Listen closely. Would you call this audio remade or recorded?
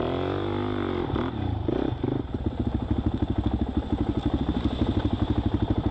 recorded